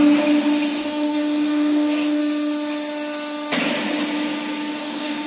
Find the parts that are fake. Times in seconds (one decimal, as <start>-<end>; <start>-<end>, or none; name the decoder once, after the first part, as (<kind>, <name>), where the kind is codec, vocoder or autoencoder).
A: 0.8-2.2 (codec, DAC); 4.7-5.3